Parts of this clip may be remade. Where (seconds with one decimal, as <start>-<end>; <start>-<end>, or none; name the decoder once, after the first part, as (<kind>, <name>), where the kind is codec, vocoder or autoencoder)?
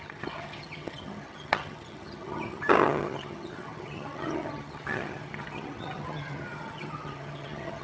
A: 0.0-7.8 (vocoder, HiFi-GAN)